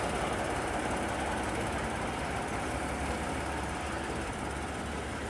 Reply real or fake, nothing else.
real